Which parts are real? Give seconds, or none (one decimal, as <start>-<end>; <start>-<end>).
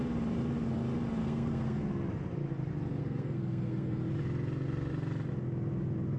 0.0-1.2; 1.8-3.0; 4.0-6.2